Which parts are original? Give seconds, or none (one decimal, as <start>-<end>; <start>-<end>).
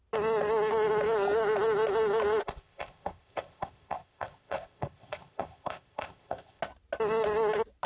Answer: 0.0-2.4; 6.6-7.9